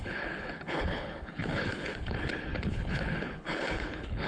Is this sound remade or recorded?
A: remade